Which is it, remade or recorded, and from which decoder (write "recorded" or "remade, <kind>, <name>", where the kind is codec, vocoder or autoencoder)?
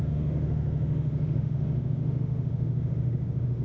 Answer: remade, autoencoder, DAC-VAE